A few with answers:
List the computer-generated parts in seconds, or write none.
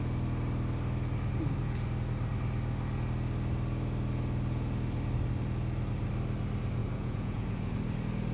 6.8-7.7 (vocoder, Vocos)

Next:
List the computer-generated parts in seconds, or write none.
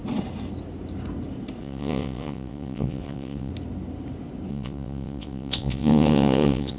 1.6-3.5 (vocoder, WaveNeXt); 4.5-6.8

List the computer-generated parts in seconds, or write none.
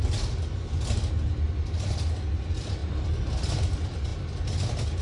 none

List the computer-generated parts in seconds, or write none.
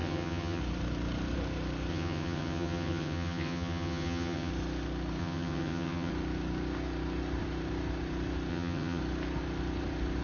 0.0-0.6 (vocoder, HiFi-GAN); 1.9-4.5; 5.2-6.1; 8.5-9.0